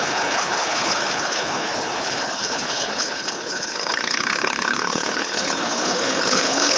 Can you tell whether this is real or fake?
fake